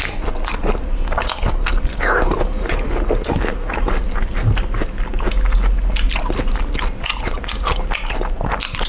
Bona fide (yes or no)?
yes